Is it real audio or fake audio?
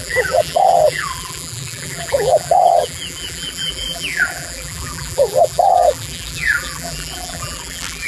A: fake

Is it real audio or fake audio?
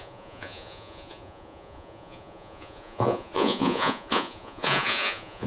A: fake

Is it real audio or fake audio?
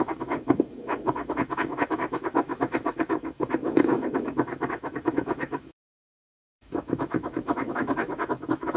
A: fake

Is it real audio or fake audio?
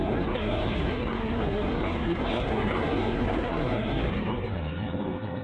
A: fake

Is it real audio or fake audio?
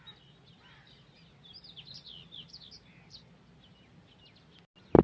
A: real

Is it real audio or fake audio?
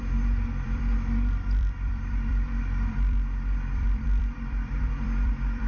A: fake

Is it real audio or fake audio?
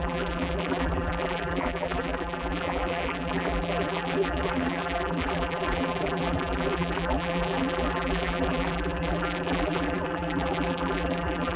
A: fake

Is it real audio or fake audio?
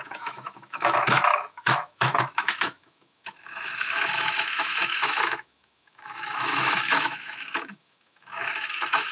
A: fake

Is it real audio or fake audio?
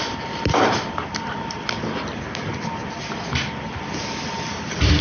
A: real